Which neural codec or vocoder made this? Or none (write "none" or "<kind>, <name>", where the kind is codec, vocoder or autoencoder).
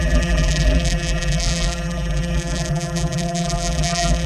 vocoder, BigVGAN v2